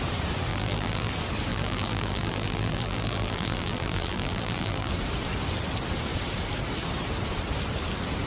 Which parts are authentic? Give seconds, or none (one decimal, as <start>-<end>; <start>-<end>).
0.0-0.5; 1.1-1.5; 4.9-8.3